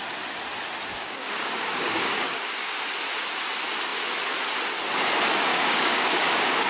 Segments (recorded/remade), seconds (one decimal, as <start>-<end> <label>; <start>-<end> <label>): 0.0-0.9 recorded; 0.9-2.8 remade; 2.8-5.5 recorded; 5.5-6.7 remade